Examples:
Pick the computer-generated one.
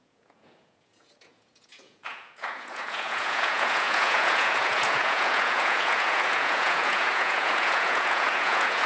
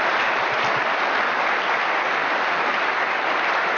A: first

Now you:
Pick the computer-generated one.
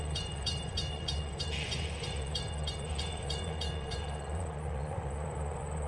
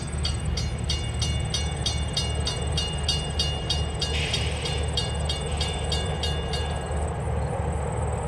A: first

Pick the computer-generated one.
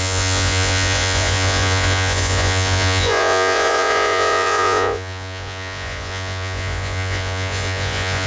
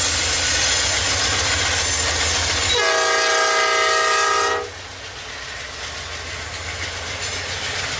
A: first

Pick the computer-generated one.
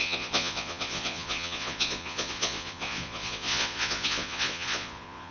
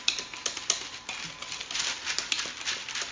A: first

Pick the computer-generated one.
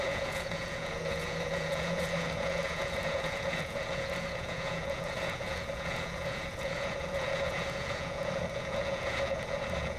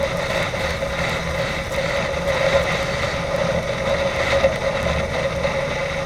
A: first